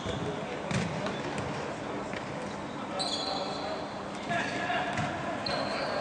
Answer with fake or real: real